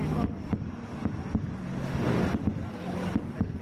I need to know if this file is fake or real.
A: real